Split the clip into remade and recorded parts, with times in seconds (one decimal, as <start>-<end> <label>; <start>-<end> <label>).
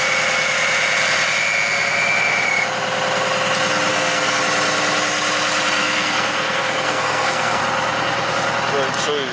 0.0-3.9 recorded; 3.9-4.4 remade; 4.4-5.8 recorded; 5.8-7.6 remade; 7.6-9.3 recorded